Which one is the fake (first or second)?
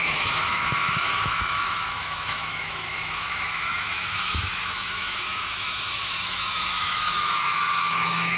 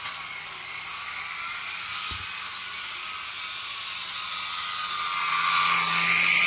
first